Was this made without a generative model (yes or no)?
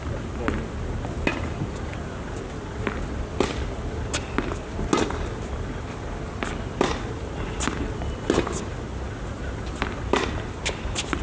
yes